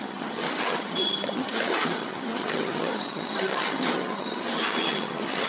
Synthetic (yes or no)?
yes